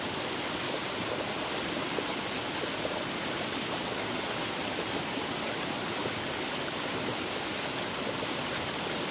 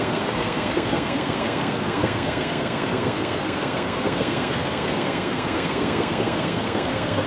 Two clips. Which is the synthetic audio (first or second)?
second